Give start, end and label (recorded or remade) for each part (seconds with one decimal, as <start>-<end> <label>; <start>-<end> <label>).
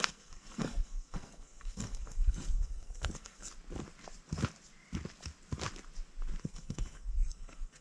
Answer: 0.0-3.5 remade; 3.5-6.4 recorded; 6.4-7.8 remade